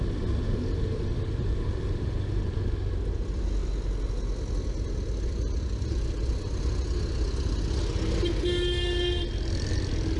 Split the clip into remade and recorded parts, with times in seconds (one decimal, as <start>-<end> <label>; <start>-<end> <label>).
0.0-10.2 recorded